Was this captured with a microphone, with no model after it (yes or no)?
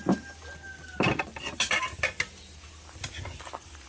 yes